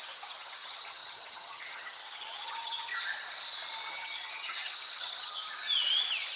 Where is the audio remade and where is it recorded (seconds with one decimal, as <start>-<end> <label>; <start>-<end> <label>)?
0.0-2.9 remade; 2.9-3.9 recorded; 3.9-5.4 remade; 5.4-6.4 recorded